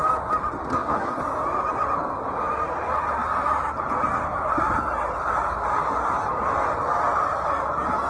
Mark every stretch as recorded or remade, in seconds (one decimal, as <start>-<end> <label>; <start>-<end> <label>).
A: 0.0-0.7 recorded; 0.7-1.2 remade; 1.2-8.1 recorded